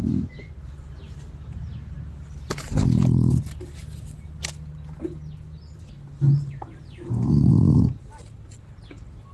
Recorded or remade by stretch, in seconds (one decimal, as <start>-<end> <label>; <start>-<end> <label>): 0.0-0.5 remade; 0.5-6.8 recorded; 6.8-7.8 remade; 7.8-9.3 recorded